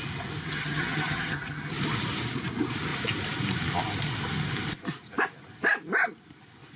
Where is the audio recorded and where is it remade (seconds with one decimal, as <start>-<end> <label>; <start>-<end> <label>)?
0.0-0.4 recorded; 0.4-1.7 remade; 1.7-6.8 recorded